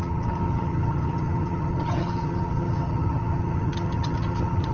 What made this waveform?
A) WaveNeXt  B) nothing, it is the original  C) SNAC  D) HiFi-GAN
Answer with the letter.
D